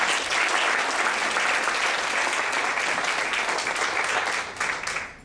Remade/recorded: recorded